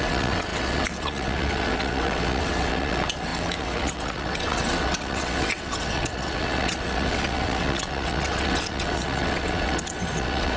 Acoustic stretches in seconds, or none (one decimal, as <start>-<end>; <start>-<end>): none